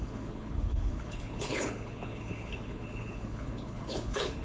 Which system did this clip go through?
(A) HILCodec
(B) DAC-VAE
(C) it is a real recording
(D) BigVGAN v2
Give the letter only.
A